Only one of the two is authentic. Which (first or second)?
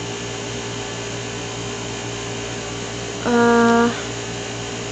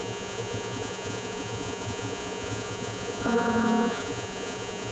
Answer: first